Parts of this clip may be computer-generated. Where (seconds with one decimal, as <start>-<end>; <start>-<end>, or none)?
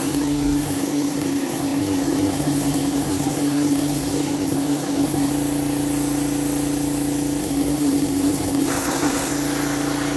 0.0-5.3; 7.4-9.3